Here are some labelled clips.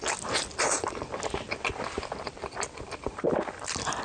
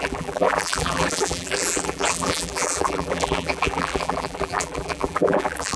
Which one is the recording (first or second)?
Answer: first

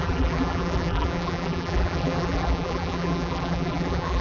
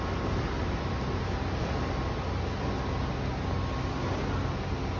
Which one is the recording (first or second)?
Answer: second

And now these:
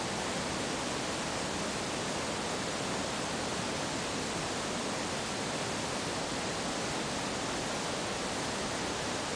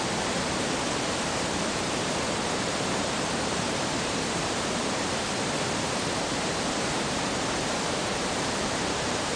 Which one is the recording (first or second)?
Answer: first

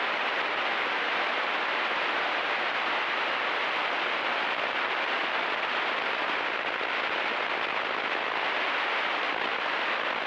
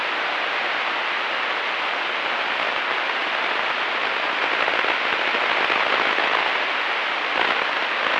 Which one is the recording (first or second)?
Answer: second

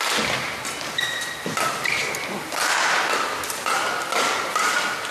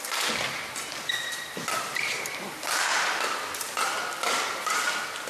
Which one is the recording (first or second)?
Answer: first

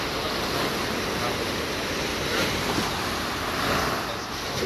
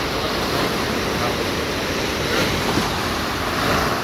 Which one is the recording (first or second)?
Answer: first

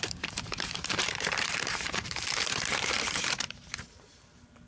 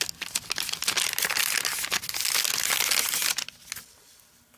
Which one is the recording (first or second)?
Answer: second